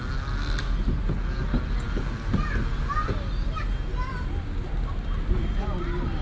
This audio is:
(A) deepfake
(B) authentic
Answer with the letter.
B